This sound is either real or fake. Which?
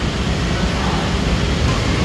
real